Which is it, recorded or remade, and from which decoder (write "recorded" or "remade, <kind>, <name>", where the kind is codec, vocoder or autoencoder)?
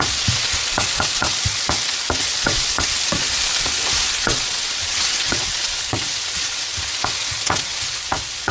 remade, vocoder, WaveNeXt